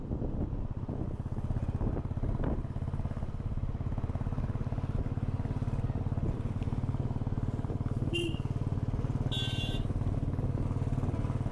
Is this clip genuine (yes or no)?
yes